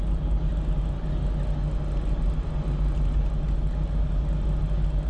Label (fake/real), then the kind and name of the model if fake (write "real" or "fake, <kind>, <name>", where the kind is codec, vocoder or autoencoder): real